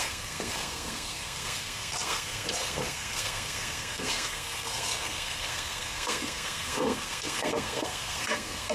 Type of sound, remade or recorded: remade